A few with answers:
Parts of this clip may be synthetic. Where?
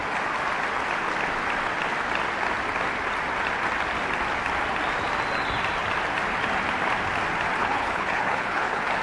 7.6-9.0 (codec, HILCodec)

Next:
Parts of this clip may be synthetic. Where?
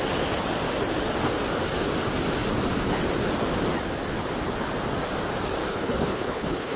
5.7-6.8 (codec, HILCodec)